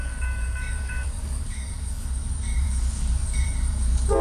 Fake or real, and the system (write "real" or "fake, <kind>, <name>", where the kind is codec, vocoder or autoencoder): fake, codec, DAC